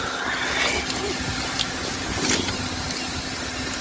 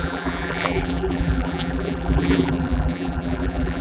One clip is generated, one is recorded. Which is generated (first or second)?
second